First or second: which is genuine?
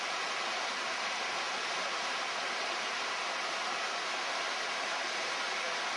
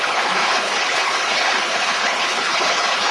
first